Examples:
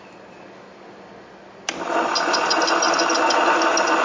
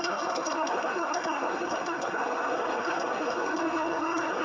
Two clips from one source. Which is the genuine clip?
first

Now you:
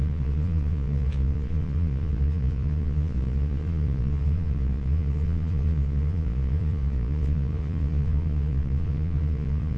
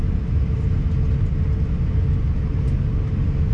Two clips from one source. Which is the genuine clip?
second